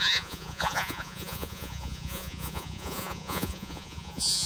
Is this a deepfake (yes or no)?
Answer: yes